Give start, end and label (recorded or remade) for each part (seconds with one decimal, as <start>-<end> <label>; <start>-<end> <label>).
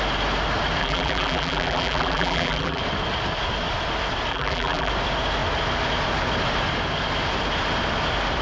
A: 0.0-0.8 recorded; 0.8-2.8 remade; 2.8-4.3 recorded; 4.3-4.9 remade; 4.9-8.4 recorded